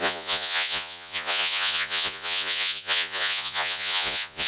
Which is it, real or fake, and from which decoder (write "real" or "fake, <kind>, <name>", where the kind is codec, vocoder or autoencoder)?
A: fake, vocoder, Vocos